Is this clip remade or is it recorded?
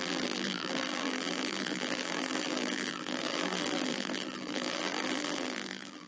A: remade